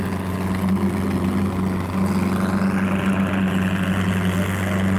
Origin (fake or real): real